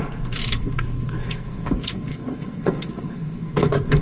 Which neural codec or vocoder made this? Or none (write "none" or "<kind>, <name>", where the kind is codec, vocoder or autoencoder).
codec, SNAC